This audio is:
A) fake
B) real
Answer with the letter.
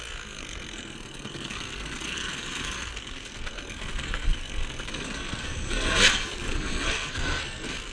A